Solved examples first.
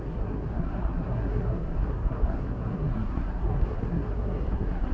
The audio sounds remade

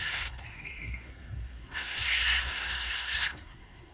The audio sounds remade